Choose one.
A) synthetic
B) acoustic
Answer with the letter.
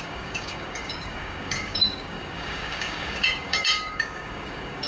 A